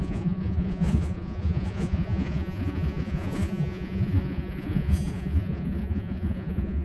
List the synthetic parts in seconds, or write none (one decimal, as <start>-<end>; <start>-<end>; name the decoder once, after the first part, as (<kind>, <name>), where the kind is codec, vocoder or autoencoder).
0.0-6.8 (vocoder, Vocos)

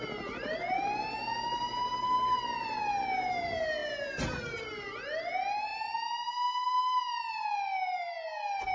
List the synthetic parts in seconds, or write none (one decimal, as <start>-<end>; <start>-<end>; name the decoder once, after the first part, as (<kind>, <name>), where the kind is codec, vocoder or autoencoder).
none